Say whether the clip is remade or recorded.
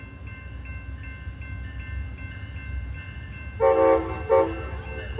recorded